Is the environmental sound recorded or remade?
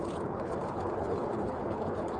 remade